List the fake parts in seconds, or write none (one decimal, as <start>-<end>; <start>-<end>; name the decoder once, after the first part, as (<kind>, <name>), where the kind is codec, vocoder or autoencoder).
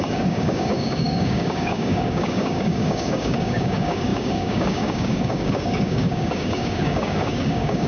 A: 0.0-7.9 (codec, DAC)